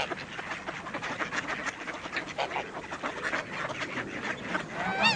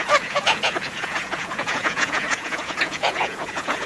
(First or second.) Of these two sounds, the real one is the first